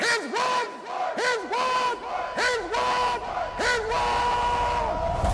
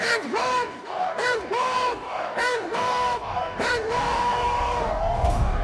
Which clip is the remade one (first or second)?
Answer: second